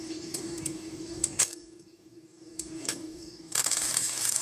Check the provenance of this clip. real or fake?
fake